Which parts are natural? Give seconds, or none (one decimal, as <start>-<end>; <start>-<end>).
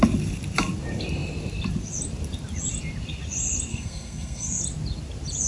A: 0.0-3.7; 4.6-5.5